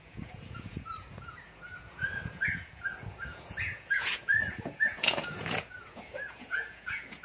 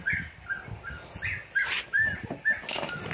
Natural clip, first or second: second